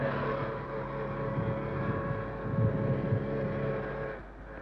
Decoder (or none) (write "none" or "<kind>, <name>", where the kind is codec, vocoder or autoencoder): none